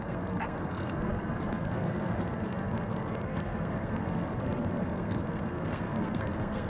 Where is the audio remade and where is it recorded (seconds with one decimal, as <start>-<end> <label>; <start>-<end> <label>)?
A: 0.0-6.7 remade